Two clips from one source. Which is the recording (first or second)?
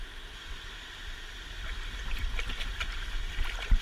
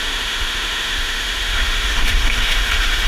first